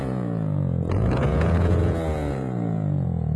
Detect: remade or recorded remade